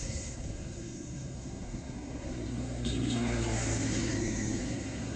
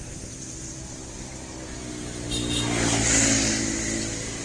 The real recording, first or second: second